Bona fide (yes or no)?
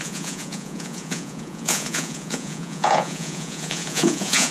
no